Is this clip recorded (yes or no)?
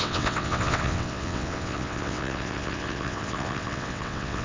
no